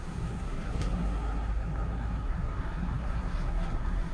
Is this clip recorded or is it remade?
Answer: remade